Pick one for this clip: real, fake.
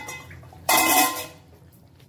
fake